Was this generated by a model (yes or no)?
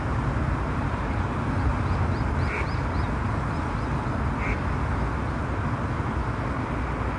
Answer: no